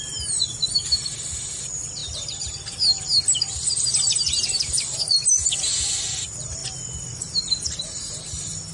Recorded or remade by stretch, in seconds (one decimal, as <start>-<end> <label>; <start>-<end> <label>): 0.0-2.0 remade; 2.0-3.2 recorded; 3.2-6.6 remade; 6.6-8.2 recorded; 8.2-8.7 remade